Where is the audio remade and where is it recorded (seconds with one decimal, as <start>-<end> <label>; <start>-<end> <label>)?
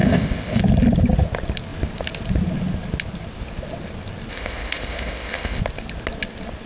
0.0-0.6 remade; 0.6-4.3 recorded; 4.3-5.6 remade; 5.6-6.7 recorded